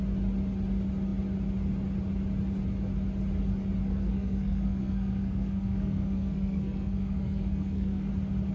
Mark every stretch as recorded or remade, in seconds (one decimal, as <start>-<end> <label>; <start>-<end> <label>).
0.0-3.8 recorded; 3.8-8.1 remade; 8.1-8.5 recorded

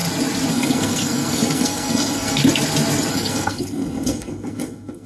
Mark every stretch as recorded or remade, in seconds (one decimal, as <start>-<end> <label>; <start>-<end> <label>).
0.0-0.5 recorded; 0.5-2.4 remade; 2.4-3.1 recorded; 3.1-5.1 remade

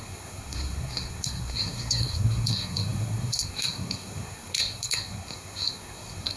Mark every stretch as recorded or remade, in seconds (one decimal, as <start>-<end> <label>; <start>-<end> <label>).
0.0-6.4 remade

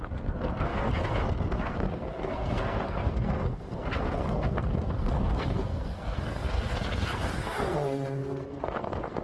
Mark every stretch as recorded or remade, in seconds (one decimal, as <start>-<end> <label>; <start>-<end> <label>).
0.0-9.2 remade

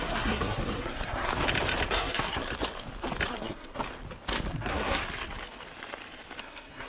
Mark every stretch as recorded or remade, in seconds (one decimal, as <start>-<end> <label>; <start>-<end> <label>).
0.0-1.3 remade; 1.3-1.9 recorded; 1.9-2.4 remade; 2.4-3.3 recorded; 3.3-3.8 remade; 3.8-4.5 recorded; 4.5-5.0 remade; 5.0-6.4 recorded; 6.4-6.9 remade

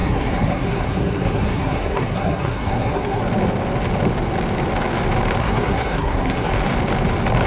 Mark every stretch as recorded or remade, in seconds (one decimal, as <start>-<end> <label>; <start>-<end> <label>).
0.0-3.2 remade; 3.2-5.4 recorded; 5.4-6.5 remade; 6.5-7.5 recorded

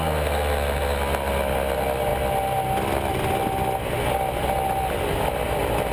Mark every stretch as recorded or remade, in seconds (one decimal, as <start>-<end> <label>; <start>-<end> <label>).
0.0-5.9 recorded